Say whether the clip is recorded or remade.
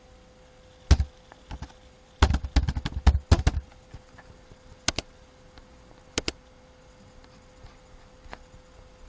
recorded